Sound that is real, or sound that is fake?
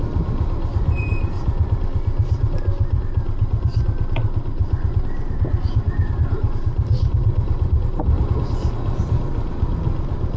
real